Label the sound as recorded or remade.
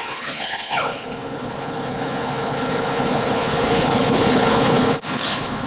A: remade